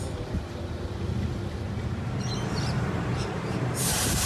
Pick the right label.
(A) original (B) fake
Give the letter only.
B